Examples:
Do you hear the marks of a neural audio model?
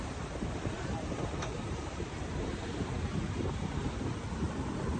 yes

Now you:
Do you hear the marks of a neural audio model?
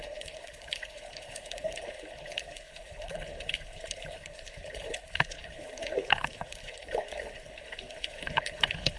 yes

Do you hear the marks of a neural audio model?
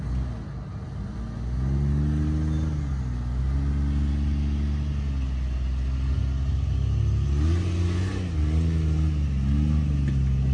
no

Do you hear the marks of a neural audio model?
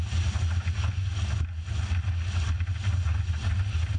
no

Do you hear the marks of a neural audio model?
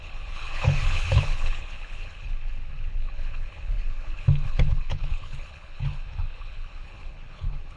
yes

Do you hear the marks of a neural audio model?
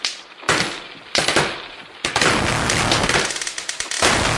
no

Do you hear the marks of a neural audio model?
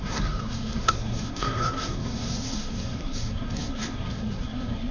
yes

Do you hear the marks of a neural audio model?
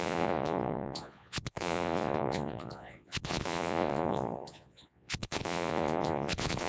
yes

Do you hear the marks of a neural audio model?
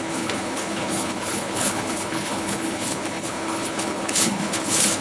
yes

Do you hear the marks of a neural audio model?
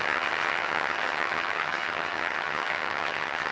yes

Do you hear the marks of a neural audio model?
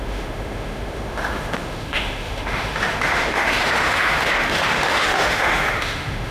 yes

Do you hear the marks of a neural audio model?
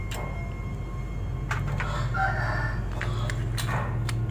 no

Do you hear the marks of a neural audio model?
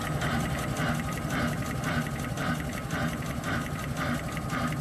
no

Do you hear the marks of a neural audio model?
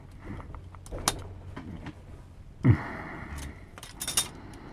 no